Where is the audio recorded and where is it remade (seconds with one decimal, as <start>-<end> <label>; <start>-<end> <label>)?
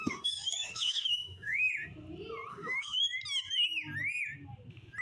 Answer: 0.0-1.7 remade; 1.7-2.5 recorded; 2.5-3.0 remade; 3.0-5.0 recorded